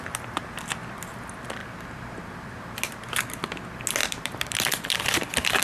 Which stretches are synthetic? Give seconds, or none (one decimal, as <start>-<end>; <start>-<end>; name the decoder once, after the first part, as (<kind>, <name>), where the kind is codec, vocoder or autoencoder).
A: 4.0-5.0 (vocoder, BigVGAN v2)